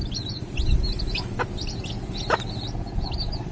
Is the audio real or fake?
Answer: real